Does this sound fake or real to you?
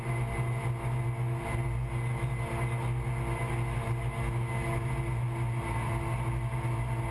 real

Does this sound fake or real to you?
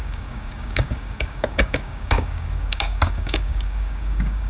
fake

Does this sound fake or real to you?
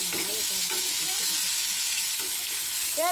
fake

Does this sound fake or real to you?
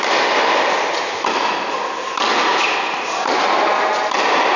real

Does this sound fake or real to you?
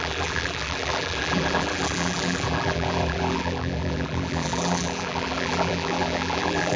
fake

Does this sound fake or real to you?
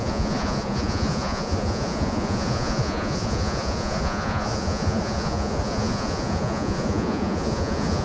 fake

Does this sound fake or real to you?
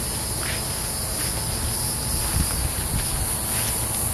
real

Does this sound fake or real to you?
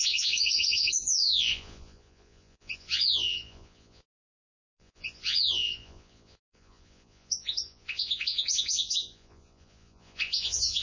fake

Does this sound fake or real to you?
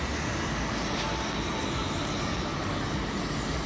real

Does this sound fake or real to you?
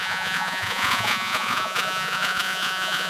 fake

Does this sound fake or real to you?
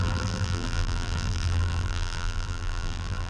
fake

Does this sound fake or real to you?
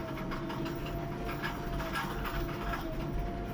real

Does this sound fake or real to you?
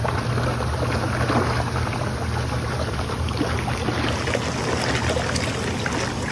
real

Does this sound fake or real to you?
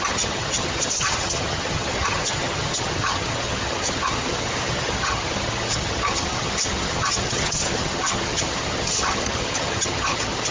fake